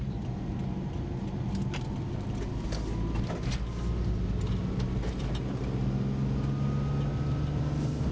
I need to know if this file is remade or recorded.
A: recorded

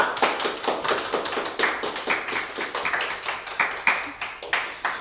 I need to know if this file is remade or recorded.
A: recorded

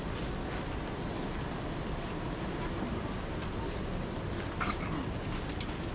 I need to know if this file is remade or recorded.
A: recorded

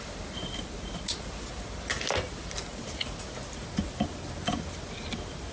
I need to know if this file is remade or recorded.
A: recorded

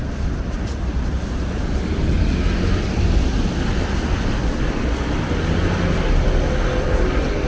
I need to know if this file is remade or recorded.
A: recorded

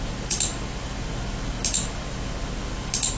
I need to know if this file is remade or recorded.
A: recorded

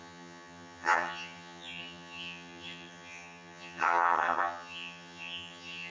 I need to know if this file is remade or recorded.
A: remade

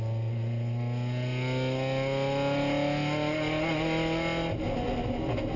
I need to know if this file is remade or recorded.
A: recorded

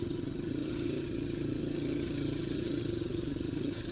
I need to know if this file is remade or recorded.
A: remade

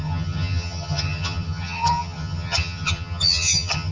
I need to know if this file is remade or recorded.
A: remade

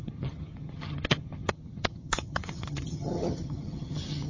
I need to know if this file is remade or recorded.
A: remade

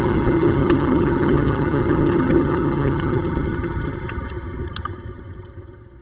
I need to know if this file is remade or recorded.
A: remade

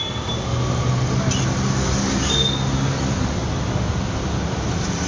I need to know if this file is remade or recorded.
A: recorded